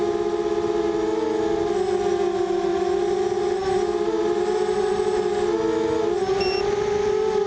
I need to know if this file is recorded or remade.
recorded